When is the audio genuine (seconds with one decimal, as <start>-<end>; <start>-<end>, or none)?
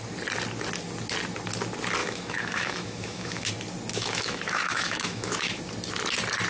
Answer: 0.0-2.0; 3.5-3.9; 5.6-6.5